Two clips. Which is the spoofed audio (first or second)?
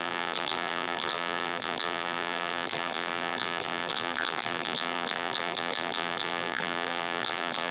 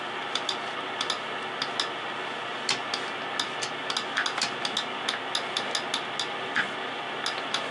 first